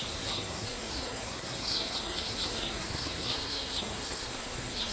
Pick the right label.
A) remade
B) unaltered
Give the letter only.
A